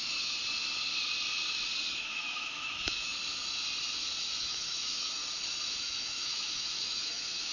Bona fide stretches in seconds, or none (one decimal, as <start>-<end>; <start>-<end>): 0.4-1.9; 3.1-4.4; 5.2-5.8